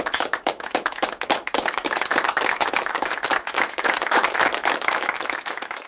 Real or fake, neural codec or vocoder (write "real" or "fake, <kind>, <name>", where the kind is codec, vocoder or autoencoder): fake, autoencoder, DAC-VAE